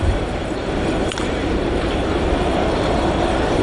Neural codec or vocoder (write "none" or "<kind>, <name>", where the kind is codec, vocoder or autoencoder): vocoder, BigVGAN v2